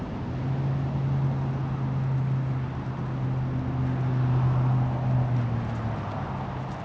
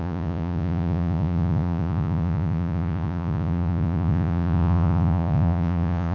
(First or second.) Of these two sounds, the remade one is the second